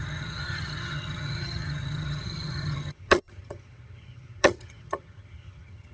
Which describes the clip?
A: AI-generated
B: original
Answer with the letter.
A